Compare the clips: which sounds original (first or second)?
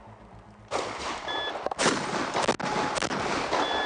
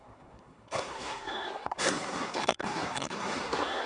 first